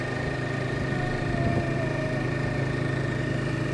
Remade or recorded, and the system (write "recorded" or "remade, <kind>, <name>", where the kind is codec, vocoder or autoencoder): remade, vocoder, BigVGAN v2